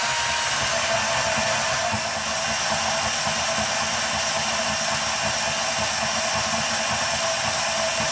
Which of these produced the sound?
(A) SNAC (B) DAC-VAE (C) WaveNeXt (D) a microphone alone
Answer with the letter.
D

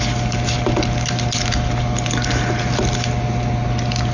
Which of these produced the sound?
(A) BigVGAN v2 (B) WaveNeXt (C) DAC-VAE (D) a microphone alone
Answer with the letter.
D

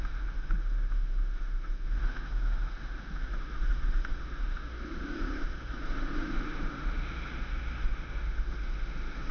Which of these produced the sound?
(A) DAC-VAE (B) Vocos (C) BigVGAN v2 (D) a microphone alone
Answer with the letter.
A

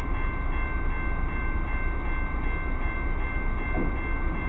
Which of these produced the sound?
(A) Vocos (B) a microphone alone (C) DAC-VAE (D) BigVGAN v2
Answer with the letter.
B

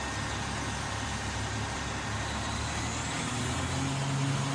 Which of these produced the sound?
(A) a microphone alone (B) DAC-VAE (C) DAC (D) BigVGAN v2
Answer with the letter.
A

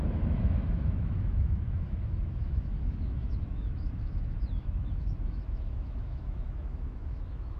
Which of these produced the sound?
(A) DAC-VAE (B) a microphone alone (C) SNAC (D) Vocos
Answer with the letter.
A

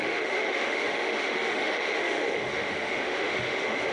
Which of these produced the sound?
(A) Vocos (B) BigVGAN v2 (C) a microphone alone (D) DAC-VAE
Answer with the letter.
D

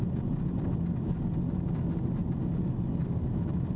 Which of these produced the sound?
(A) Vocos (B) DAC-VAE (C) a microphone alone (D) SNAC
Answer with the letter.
C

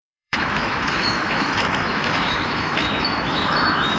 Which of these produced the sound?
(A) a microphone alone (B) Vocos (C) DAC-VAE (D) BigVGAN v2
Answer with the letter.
C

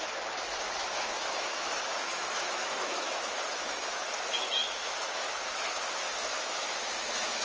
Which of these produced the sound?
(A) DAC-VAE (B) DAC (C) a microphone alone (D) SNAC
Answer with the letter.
A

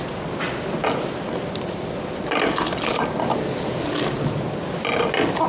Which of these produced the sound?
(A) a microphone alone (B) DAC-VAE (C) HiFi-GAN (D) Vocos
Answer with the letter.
A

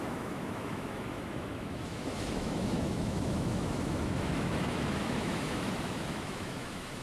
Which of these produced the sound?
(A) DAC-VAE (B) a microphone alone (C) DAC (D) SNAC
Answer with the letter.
A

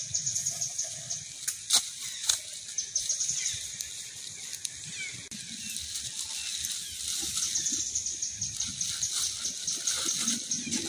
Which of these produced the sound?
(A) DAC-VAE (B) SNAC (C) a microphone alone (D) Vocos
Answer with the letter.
C